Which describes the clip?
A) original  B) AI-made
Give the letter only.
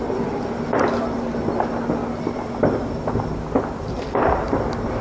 A